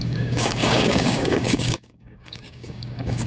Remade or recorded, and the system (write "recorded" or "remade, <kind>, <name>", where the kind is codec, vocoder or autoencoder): remade, codec, DAC